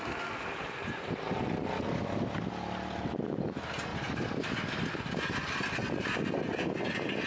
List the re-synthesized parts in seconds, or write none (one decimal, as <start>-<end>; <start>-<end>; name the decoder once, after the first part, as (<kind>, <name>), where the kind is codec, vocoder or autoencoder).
none